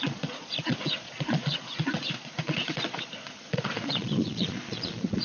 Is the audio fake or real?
fake